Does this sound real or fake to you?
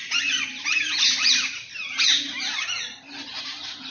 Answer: real